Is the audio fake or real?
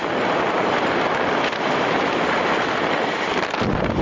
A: real